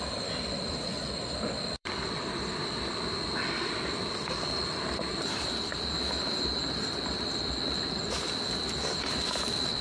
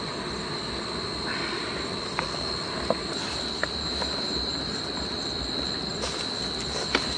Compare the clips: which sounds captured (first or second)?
second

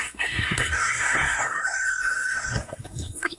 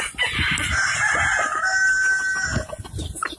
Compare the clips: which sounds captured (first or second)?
second